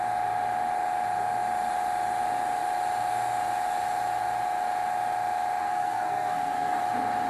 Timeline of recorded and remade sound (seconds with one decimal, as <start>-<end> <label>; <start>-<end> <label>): 0.0-5.6 recorded; 5.6-6.8 remade; 6.8-7.3 recorded